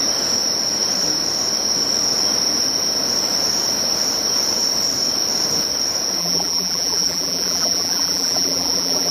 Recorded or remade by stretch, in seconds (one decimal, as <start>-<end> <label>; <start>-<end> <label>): 0.0-6.2 recorded; 6.2-9.1 remade